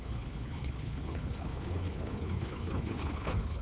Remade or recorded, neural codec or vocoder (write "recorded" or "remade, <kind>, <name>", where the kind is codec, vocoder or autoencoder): remade, codec, HILCodec